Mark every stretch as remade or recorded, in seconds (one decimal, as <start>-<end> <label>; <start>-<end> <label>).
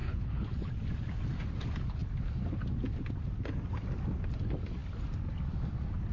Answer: 0.0-0.7 remade; 0.7-6.1 recorded